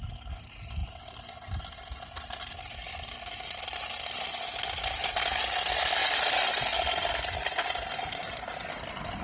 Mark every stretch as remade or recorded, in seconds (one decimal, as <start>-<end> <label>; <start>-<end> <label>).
0.0-9.2 recorded